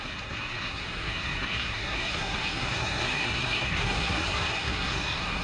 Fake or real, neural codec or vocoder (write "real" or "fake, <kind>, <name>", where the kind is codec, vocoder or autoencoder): fake, codec, SNAC